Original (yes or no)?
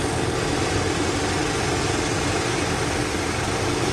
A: yes